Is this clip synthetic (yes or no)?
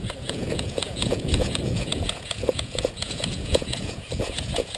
yes